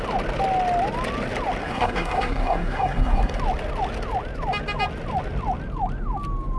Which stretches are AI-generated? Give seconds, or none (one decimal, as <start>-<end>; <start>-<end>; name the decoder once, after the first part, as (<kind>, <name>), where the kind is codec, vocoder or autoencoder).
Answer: 1.6-3.4 (codec, SNAC)